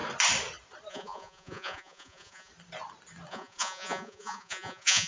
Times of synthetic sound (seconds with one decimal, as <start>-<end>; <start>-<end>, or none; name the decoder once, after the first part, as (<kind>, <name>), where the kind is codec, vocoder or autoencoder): 0.9-2.5 (vocoder, Vocos); 3.3-5.1